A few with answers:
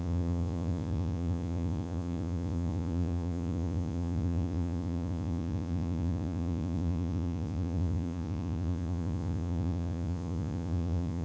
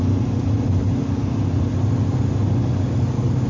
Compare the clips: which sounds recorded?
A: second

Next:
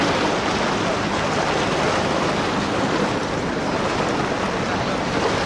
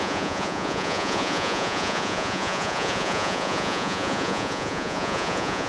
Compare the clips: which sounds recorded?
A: first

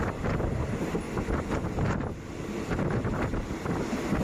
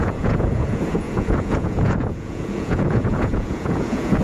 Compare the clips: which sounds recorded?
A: first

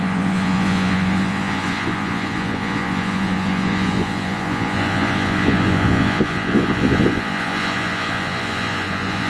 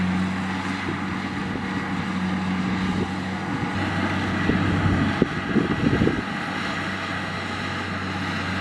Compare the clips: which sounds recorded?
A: second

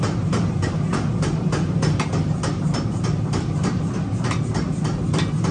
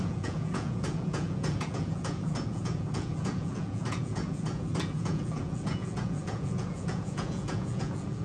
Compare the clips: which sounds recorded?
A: first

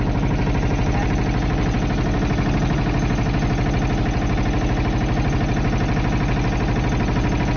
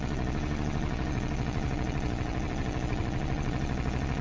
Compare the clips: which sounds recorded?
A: first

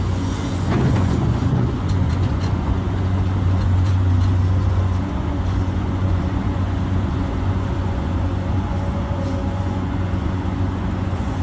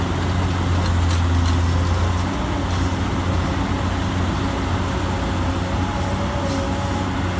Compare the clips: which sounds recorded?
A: second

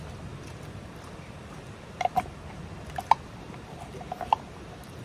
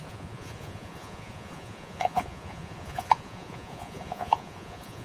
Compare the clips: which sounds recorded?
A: first